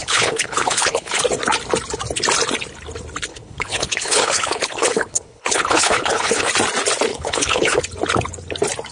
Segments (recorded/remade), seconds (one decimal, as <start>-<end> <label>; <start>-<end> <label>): 0.0-1.2 remade; 1.2-3.3 recorded; 3.3-6.5 remade; 6.5-7.1 recorded; 7.1-7.8 remade; 7.8-8.9 recorded